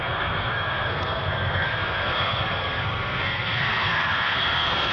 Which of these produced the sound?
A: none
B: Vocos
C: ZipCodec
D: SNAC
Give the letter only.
D